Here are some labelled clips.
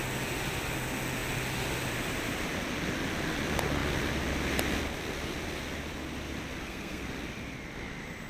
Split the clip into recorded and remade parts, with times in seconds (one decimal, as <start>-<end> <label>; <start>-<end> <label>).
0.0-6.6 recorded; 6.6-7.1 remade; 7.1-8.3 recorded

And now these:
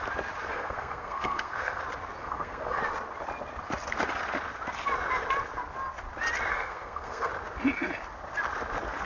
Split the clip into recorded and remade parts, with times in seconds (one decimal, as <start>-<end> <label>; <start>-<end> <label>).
0.0-0.5 recorded; 0.5-1.8 remade; 1.8-2.2 recorded; 2.2-2.8 remade; 2.8-6.5 recorded; 6.5-7.3 remade; 7.3-9.1 recorded

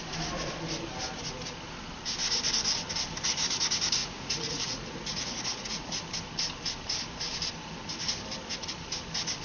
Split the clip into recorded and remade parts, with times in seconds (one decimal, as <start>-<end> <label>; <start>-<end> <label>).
0.0-4.0 recorded; 4.0-6.0 remade; 6.0-9.4 recorded

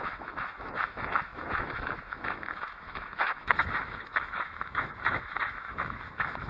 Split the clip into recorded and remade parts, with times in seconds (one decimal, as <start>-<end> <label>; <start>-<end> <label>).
0.0-6.5 remade

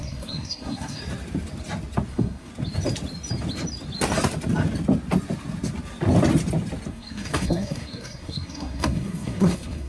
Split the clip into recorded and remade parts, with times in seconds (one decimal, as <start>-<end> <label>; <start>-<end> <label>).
0.0-1.0 remade; 1.0-2.1 recorded; 2.1-2.5 remade; 2.5-6.9 recorded; 6.9-9.9 remade

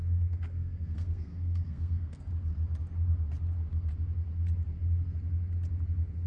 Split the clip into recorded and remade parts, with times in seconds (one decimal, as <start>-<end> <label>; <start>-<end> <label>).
0.0-2.3 remade; 2.3-6.3 recorded

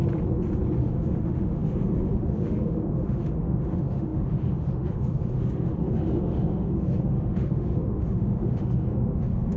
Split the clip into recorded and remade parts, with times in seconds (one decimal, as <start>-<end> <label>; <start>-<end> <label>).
0.0-0.8 recorded; 0.8-9.6 remade